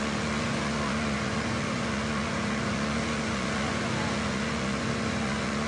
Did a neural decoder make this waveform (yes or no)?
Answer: yes